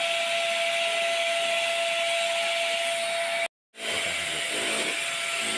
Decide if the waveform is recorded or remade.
recorded